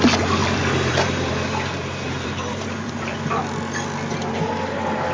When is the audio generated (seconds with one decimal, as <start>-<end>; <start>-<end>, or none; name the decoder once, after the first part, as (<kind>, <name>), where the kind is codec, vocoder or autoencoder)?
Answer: 0.4-3.4 (vocoder, BigVGAN v2)